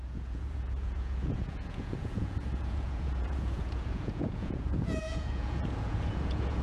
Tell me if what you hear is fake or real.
fake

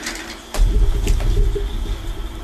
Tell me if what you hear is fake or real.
real